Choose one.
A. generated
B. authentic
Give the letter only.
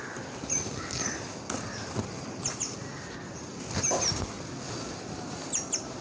B